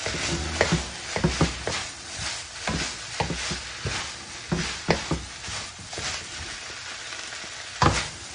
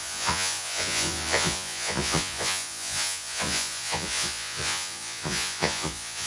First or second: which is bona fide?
first